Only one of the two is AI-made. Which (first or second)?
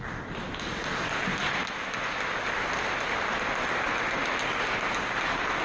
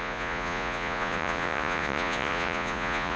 second